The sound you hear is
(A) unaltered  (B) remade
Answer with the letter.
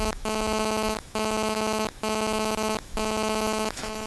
B